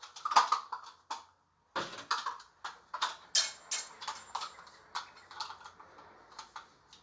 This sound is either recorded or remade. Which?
recorded